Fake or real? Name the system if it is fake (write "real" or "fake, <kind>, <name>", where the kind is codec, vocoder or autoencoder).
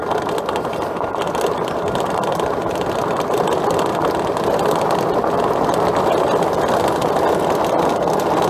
real